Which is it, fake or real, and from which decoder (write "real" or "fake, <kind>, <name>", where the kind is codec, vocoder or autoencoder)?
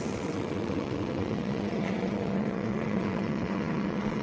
fake, vocoder, WaveNeXt